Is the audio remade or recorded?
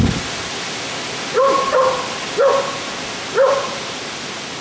recorded